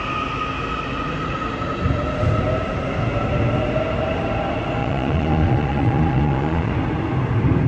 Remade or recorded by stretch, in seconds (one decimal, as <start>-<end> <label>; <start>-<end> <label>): 0.0-4.8 recorded; 4.8-6.7 remade; 6.7-7.7 recorded